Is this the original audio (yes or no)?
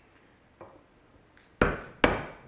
yes